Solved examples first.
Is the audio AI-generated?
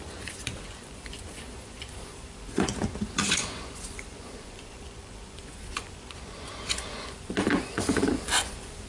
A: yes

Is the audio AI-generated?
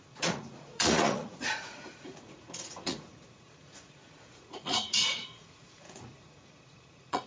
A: yes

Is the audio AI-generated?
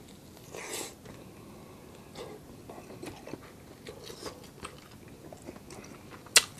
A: no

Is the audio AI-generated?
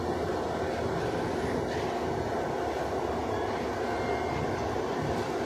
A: no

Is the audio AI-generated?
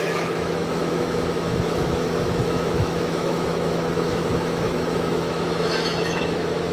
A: yes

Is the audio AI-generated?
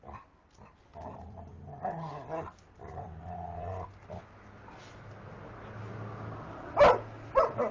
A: no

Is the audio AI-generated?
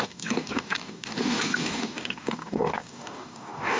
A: yes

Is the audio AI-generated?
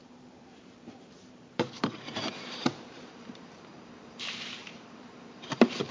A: yes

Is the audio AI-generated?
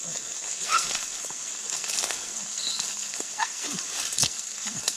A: yes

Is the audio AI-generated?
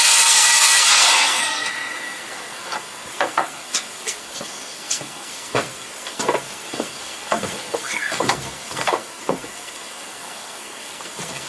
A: yes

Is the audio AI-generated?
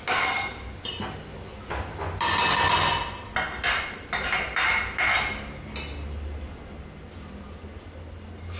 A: no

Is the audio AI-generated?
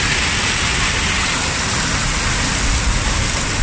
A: no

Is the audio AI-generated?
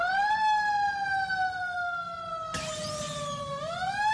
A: no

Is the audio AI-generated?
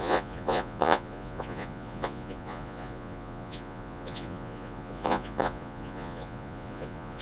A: yes